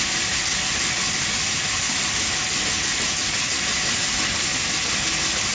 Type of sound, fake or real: real